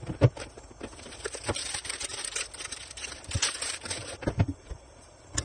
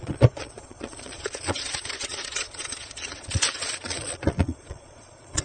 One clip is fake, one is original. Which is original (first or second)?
first